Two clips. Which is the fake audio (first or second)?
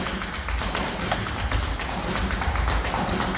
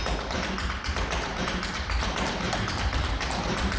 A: second